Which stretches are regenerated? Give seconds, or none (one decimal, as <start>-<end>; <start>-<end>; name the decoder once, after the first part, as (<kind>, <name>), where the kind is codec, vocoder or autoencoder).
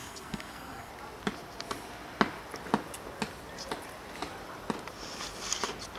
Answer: 0.0-0.9 (codec, SNAC)